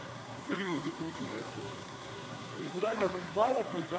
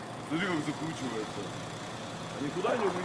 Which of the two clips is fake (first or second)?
first